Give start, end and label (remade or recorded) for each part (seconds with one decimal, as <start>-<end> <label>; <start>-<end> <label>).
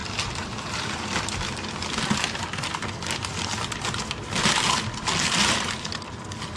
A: 0.0-6.6 recorded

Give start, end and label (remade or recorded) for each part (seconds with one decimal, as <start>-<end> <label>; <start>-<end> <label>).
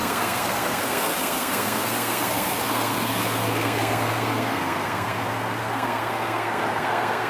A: 0.0-7.3 remade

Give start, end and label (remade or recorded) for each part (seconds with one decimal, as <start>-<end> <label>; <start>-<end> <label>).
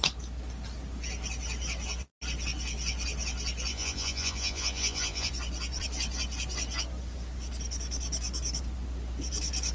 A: 0.0-3.7 recorded; 3.7-5.3 remade; 5.3-9.7 recorded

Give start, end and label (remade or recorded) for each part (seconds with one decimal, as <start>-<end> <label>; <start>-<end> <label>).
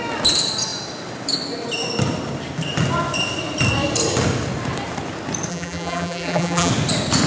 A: 0.0-5.5 recorded; 5.5-6.7 remade; 6.7-7.3 recorded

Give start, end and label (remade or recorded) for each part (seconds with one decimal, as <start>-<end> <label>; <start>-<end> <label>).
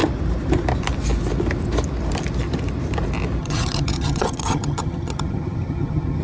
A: 0.0-3.4 recorded; 3.4-6.2 remade